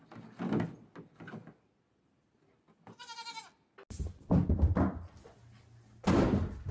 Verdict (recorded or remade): recorded